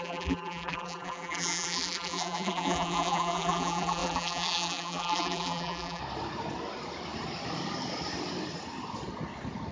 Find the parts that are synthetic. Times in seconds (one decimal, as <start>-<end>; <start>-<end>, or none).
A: 0.0-6.0